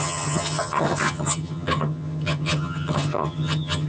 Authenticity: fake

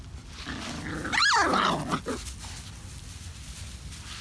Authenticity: real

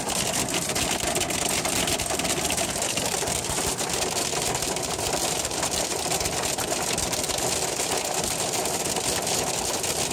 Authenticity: real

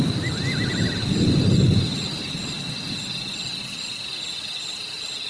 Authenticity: real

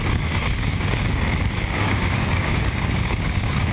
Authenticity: fake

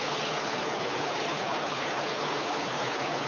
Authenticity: fake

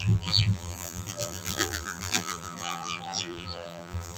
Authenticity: fake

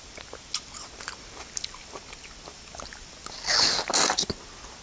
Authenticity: real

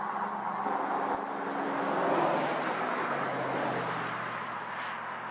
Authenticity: real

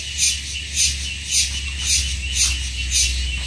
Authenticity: real